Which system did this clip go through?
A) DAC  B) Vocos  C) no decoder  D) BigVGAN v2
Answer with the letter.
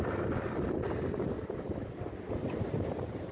C